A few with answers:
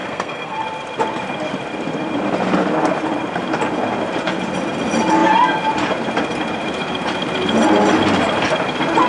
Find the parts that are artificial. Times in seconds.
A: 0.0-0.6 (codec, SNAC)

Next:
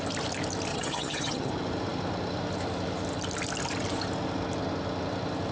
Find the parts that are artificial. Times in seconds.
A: 0.7-1.5 (vocoder, HiFi-GAN)

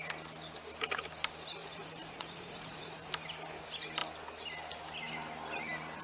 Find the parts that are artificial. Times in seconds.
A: 1.6-3.1 (vocoder, Vocos)

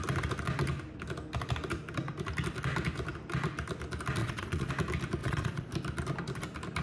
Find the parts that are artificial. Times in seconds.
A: 4.2-4.7 (vocoder, Vocos); 5.2-5.7

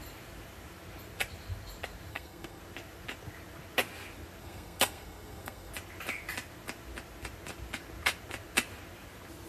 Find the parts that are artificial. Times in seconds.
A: 2.1-2.6 (codec, SNAC); 4.4-5.7

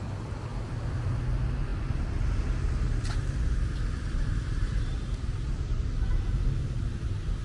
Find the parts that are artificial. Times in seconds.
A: 0.5-1.2 (vocoder, BigVGAN v2)